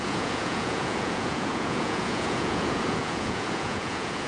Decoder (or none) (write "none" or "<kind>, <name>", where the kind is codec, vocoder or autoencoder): vocoder, Vocos